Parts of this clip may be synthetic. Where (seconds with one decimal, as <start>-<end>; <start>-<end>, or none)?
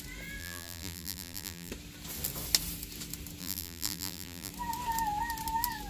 0.4-1.7; 3.4-4.5